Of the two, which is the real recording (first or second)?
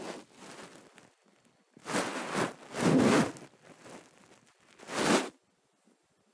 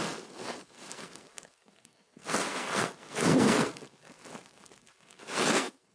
first